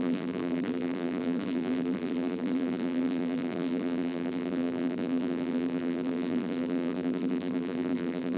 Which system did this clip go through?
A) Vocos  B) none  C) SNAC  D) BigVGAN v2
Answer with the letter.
D